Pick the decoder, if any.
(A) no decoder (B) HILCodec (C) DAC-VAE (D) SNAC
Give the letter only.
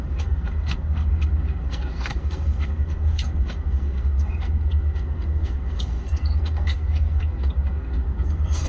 D